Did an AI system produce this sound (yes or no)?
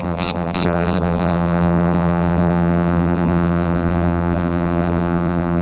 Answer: yes